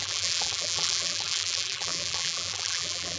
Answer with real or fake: fake